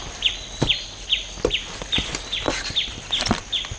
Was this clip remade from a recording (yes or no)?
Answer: no